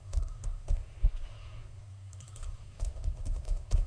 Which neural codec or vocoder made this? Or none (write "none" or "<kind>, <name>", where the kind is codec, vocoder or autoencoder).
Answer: codec, SNAC